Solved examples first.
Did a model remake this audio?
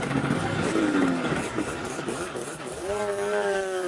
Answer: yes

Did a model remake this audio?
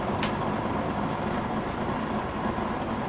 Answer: no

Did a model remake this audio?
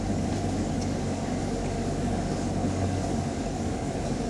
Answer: yes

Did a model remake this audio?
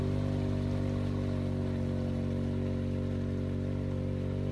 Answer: no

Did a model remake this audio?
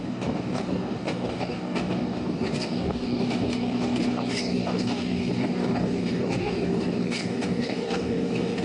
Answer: yes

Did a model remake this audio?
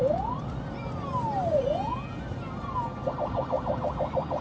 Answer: no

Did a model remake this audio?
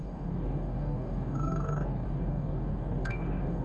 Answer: yes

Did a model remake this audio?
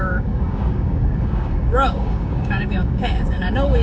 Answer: yes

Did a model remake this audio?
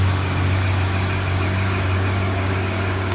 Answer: yes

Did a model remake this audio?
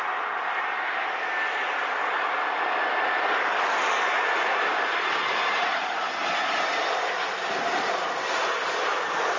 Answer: no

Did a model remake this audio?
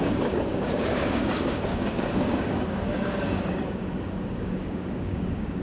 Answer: yes